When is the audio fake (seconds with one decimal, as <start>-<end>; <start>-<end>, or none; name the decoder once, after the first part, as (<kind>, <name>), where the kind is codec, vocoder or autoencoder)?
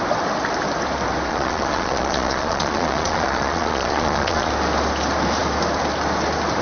1.3-4.5 (vocoder, Vocos)